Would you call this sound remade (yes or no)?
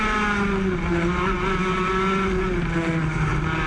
no